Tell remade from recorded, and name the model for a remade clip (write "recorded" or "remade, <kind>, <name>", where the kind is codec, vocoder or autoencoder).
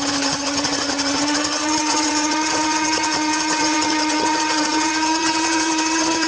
remade, vocoder, HiFi-GAN